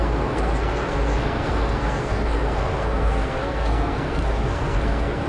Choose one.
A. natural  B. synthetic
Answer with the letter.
B